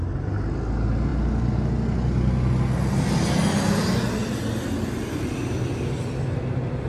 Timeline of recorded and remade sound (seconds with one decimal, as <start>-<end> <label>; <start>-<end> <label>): 0.0-6.9 recorded